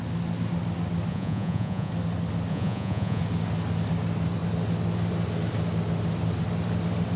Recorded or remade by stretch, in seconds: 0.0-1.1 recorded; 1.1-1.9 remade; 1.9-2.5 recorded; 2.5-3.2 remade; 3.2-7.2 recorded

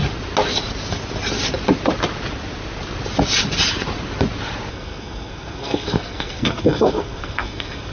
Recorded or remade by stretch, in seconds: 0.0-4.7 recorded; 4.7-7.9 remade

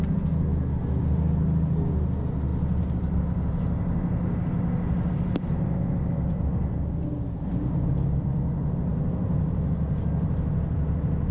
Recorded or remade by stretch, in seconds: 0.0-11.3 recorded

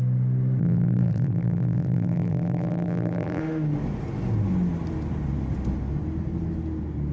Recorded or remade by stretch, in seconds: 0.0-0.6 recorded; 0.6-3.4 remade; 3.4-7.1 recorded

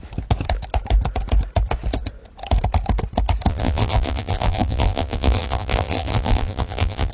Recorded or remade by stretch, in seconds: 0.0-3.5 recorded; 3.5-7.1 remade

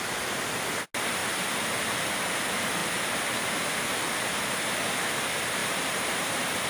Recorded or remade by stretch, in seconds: 0.0-5.6 recorded; 5.6-6.7 remade

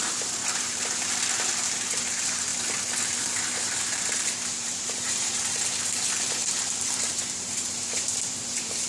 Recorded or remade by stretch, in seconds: 0.0-2.5 remade; 2.5-3.2 recorded; 3.2-8.9 remade

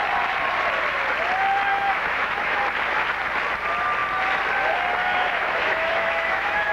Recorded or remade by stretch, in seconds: 0.0-1.7 recorded; 1.7-2.6 remade; 2.6-5.0 recorded; 5.0-6.7 remade